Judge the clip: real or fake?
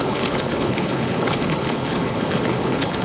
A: fake